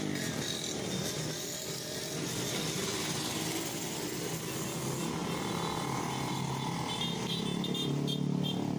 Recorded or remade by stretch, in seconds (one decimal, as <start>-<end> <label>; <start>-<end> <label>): 0.0-2.8 recorded; 2.8-4.2 remade; 4.2-8.8 recorded